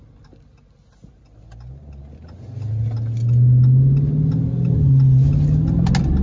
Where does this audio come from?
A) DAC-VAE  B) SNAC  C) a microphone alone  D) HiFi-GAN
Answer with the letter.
C